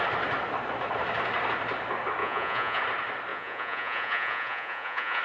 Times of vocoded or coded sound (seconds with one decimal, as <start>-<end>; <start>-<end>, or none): 2.2-2.8; 3.3-5.2